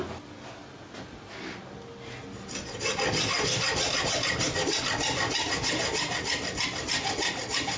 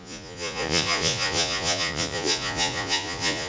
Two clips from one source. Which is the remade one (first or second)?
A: second